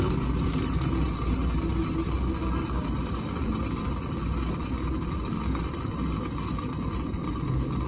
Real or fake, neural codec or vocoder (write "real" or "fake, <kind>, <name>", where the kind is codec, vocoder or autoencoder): real